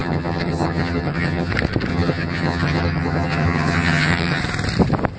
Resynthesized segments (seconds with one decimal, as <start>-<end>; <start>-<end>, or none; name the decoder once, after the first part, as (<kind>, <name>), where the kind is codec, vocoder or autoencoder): 0.0-1.5 (vocoder, HiFi-GAN); 1.9-4.4